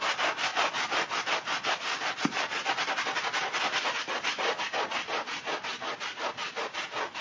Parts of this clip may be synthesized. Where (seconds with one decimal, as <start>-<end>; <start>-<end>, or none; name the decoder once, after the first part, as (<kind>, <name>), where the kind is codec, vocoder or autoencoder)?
none